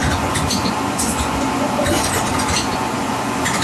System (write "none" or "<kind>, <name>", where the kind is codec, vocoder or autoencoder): vocoder, Vocos